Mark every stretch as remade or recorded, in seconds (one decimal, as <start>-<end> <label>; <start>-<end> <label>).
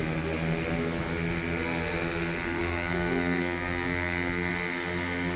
0.0-2.6 recorded; 2.6-4.5 remade; 4.5-5.4 recorded